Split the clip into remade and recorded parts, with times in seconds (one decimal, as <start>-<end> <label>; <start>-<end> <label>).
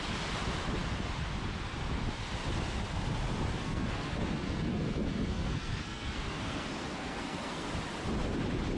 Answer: 0.0-3.6 recorded; 3.6-7.7 remade; 7.7-8.8 recorded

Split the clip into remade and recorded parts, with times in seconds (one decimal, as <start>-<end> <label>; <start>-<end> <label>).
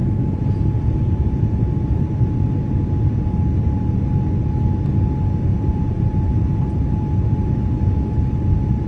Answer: 0.0-2.2 remade; 2.2-5.5 recorded; 5.5-6.6 remade; 6.6-8.9 recorded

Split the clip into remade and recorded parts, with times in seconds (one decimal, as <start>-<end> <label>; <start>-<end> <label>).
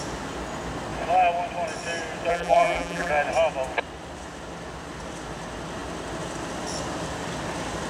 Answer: 0.0-2.3 recorded; 2.3-3.1 remade; 3.1-7.9 recorded